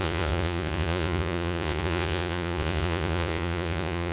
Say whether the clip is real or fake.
fake